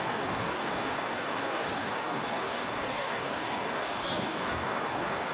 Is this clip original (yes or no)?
no